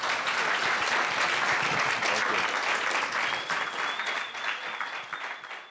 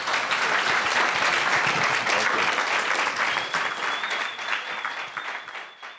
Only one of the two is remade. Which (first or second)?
second